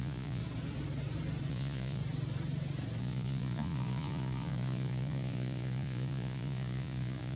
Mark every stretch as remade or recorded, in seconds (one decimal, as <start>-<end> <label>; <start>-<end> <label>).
0.0-0.4 remade; 0.4-1.5 recorded; 1.5-2.0 remade; 2.0-3.0 recorded; 3.0-7.4 remade